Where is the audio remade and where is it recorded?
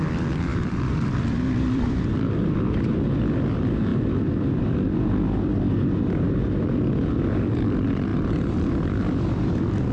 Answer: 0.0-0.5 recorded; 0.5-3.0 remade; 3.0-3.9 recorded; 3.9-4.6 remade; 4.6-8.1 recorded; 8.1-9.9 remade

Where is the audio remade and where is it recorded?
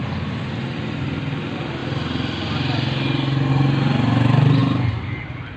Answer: 0.0-5.6 recorded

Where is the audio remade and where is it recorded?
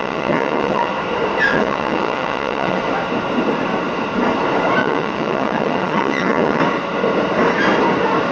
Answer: 0.0-0.9 remade; 0.9-1.5 recorded; 1.5-2.8 remade; 2.8-4.8 recorded; 4.8-6.6 remade; 6.6-8.3 recorded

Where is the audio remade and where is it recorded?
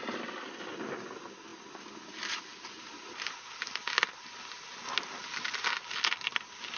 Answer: 0.0-6.8 recorded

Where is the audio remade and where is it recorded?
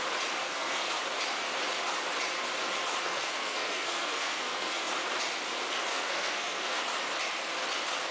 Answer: 0.0-0.4 recorded; 0.4-1.0 remade; 1.0-3.0 recorded; 3.0-4.9 remade; 4.9-5.9 recorded; 5.9-6.8 remade; 6.8-8.1 recorded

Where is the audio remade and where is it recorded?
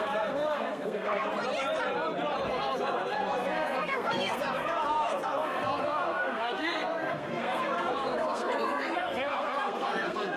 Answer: 0.0-1.3 remade; 1.3-2.5 recorded; 2.5-10.4 remade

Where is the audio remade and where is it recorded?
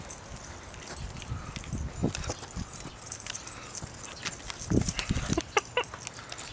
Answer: 0.0-6.5 recorded